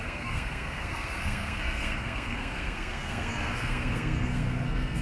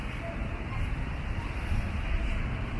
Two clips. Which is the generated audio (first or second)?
first